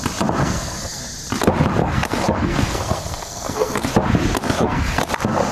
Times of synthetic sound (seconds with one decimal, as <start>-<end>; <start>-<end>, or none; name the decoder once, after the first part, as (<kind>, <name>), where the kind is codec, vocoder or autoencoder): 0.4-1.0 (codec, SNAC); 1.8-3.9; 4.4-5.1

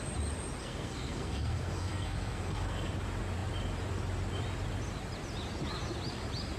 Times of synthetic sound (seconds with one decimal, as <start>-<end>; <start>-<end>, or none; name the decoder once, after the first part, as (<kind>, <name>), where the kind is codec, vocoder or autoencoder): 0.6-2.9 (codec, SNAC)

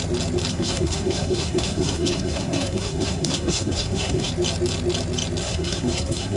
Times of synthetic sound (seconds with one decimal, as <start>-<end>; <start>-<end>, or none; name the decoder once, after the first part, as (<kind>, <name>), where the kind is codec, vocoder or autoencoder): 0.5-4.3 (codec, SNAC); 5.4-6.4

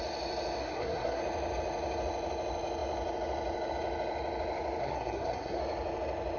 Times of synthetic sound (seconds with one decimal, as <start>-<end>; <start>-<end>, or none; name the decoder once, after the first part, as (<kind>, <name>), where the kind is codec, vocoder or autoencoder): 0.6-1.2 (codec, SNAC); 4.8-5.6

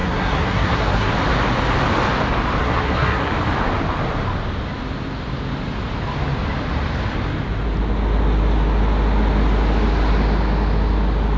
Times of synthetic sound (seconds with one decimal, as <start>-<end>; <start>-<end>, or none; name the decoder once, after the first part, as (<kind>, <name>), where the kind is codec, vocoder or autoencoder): 0.0-1.1 (codec, SNAC); 2.6-3.3